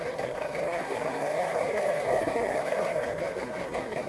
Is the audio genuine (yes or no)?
no